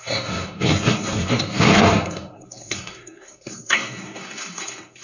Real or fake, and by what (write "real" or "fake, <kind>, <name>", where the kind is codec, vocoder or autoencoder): fake, codec, SNAC